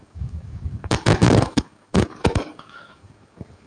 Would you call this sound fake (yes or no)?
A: yes